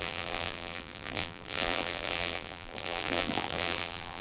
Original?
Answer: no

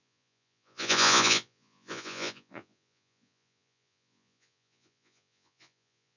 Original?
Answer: no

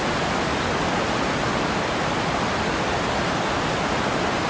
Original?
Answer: yes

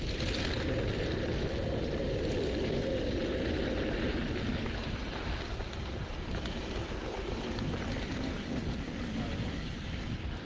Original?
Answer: yes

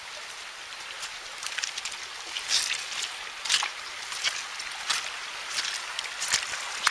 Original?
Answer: yes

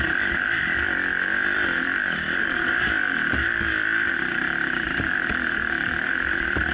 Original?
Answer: no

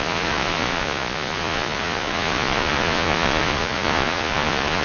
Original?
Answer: no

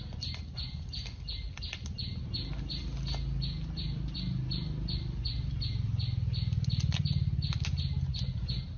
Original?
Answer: yes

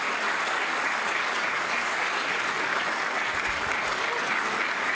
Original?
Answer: no